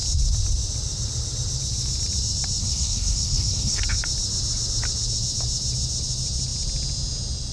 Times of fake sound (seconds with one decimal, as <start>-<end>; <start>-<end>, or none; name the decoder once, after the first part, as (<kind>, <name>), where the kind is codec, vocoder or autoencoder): 2.6-3.8 (codec, SNAC)